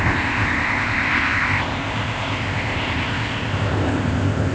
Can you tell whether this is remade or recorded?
remade